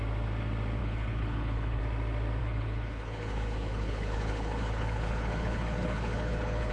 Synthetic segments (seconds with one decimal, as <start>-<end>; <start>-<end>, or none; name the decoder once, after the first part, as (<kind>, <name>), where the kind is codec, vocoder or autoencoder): 0.8-1.8 (codec, HILCodec); 2.4-6.7